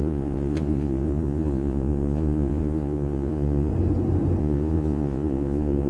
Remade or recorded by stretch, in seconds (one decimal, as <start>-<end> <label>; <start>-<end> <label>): 0.0-3.7 remade; 3.7-4.4 recorded; 4.4-5.9 remade